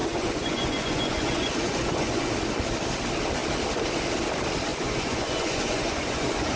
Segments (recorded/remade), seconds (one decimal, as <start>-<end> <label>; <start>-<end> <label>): 0.0-2.3 remade; 2.3-4.7 recorded; 4.7-6.6 remade